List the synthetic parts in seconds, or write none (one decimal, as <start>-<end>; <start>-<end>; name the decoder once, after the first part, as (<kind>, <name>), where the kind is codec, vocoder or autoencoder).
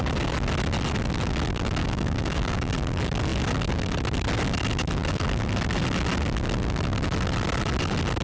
1.8-2.7 (codec, DAC)